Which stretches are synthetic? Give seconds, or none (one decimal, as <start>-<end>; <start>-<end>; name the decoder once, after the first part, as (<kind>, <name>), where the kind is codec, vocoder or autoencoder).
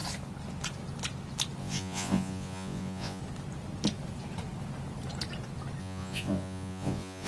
1.6-3.2 (vocoder, Vocos); 5.8-7.3